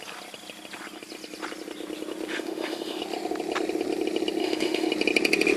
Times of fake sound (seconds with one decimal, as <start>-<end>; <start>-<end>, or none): 2.3-3.0; 4.4-4.9